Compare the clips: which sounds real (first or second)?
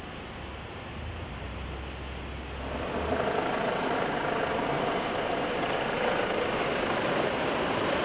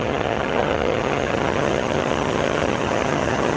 first